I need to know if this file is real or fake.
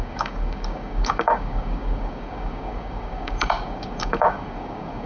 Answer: fake